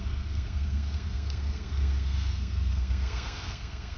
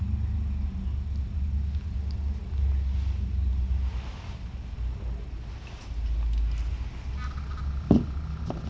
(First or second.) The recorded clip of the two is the second